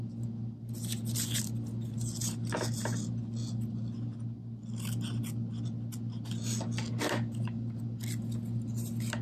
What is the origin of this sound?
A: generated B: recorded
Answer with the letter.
B